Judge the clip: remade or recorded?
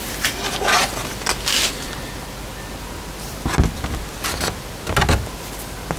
recorded